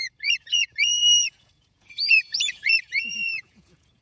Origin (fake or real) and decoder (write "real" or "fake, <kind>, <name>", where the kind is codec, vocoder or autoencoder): fake, vocoder, Vocos